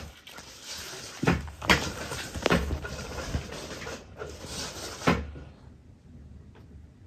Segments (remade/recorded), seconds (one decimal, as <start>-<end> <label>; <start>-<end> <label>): 0.0-7.1 recorded